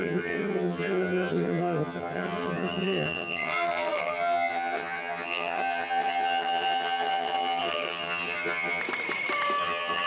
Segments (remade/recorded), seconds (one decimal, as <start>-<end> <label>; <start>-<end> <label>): 0.0-8.8 remade; 8.8-9.6 recorded; 9.6-10.1 remade